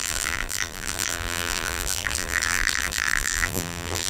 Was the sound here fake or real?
fake